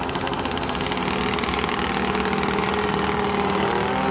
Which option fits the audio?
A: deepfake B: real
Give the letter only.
B